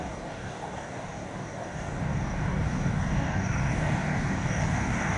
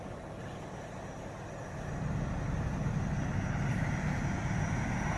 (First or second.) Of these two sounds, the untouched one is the second